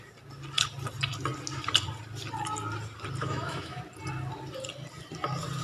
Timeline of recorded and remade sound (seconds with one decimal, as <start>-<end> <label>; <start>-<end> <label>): 0.0-3.2 recorded; 3.2-3.8 remade; 3.8-5.6 recorded